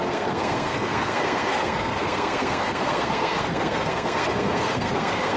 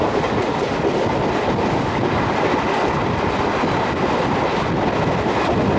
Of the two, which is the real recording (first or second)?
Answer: second